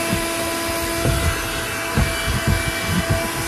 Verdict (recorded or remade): recorded